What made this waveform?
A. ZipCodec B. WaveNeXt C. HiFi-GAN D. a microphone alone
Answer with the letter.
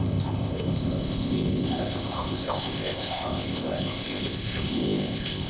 A